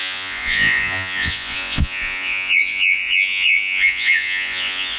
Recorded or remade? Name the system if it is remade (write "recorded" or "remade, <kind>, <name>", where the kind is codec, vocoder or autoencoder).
remade, vocoder, Vocos